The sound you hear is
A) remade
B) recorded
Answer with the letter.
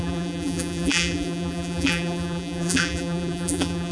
A